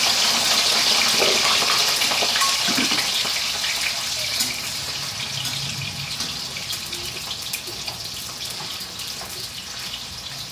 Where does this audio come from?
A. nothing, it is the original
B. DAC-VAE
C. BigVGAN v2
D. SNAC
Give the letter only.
A